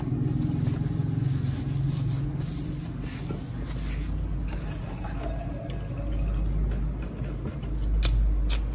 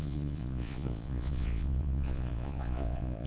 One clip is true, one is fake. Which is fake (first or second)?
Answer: second